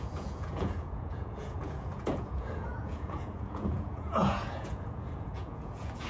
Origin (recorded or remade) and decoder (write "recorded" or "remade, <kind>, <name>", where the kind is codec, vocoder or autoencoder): remade, vocoder, Vocos